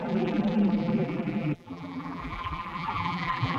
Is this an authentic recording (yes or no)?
no